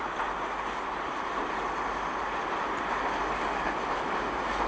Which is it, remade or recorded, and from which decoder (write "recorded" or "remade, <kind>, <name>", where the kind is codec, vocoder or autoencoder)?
recorded